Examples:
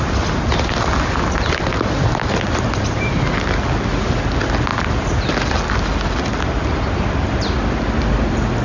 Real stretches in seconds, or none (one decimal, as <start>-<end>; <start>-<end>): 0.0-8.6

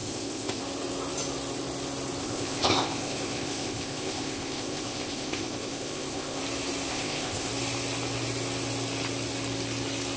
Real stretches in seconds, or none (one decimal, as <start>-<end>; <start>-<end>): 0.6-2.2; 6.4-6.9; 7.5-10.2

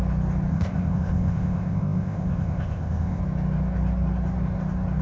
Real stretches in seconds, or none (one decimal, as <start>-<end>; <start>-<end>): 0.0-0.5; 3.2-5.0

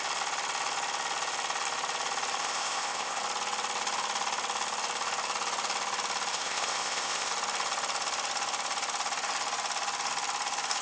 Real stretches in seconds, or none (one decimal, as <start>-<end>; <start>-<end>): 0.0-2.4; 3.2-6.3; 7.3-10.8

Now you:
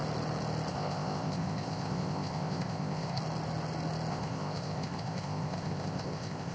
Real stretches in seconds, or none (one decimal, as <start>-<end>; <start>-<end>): 0.0-0.7; 3.2-4.1

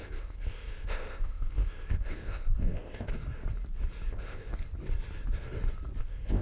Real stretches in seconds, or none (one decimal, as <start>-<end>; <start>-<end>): 3.1-4.1; 4.6-6.0